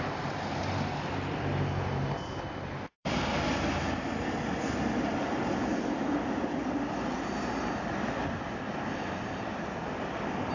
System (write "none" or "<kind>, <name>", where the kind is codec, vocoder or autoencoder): vocoder, BigVGAN v2